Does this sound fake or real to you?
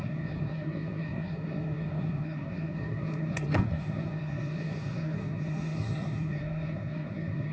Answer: fake